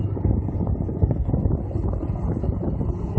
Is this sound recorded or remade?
recorded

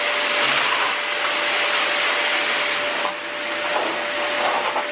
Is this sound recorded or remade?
recorded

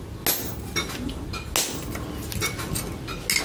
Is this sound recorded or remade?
recorded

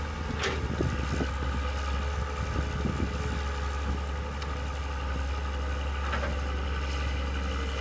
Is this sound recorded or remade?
recorded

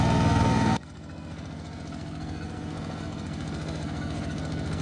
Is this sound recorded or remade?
remade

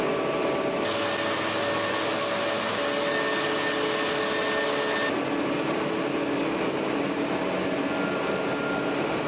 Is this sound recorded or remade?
recorded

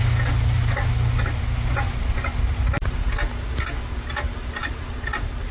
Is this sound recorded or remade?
recorded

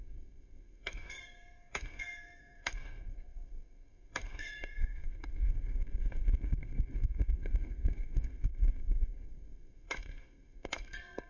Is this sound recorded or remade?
remade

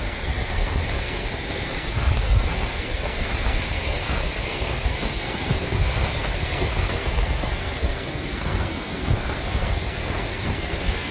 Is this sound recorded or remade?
remade